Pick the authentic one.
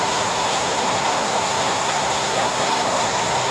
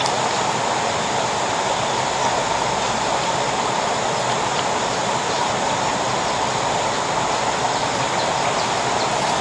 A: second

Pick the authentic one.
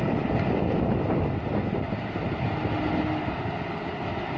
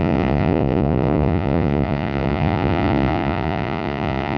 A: first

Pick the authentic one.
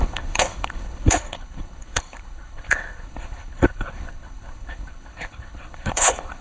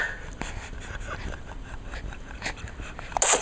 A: second